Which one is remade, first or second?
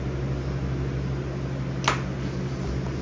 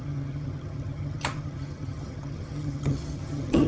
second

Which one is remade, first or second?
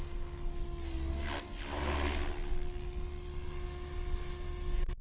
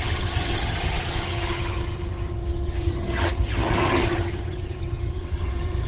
second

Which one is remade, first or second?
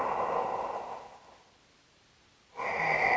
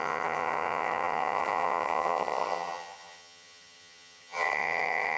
second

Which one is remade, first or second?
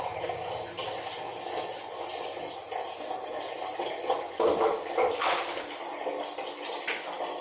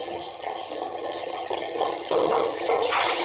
second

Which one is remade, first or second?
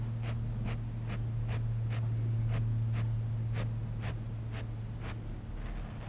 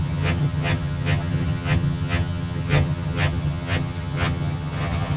second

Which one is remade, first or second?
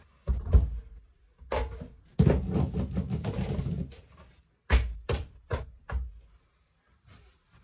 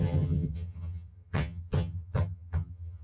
second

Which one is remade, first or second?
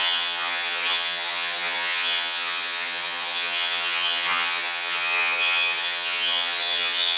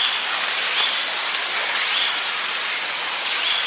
first